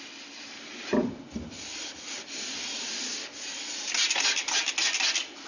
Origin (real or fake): real